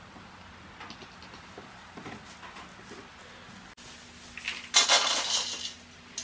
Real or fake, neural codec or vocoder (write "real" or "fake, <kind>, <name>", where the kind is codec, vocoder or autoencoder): real